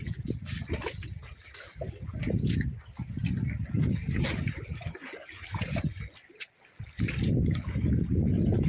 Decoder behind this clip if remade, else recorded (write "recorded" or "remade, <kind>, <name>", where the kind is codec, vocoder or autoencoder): recorded